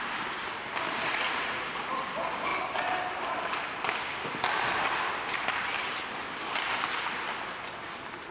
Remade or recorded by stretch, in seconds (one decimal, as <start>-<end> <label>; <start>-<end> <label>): 0.0-1.1 recorded; 1.1-1.9 remade; 1.9-8.3 recorded